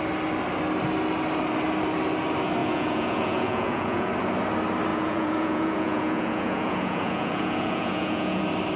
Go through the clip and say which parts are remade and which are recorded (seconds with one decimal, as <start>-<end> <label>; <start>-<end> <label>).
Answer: 0.0-2.6 recorded; 2.6-4.1 remade; 4.1-4.9 recorded; 4.9-8.4 remade; 8.4-8.8 recorded